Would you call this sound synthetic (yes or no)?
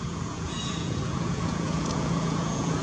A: yes